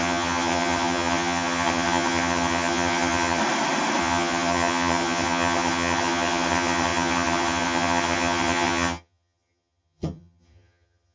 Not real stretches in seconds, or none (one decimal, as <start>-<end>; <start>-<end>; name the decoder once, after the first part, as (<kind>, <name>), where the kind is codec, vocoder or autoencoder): 0.0-3.4 (vocoder, HiFi-GAN); 4.0-11.1